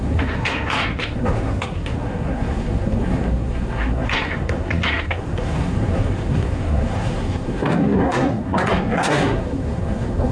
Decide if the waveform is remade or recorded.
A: remade